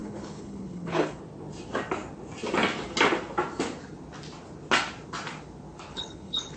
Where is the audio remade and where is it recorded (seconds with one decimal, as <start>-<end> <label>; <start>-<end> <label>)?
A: 0.0-1.2 remade; 1.2-5.9 recorded; 5.9-6.6 remade